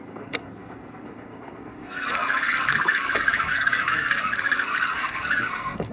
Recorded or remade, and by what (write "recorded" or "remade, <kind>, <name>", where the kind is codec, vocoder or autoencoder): remade, codec, SNAC